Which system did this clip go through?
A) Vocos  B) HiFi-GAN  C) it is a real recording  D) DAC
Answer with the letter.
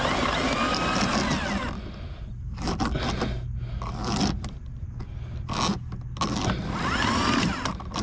C